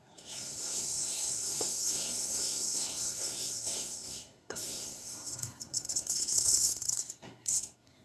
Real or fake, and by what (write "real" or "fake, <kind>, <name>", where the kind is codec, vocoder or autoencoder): fake, codec, SNAC